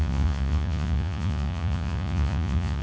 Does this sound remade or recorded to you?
remade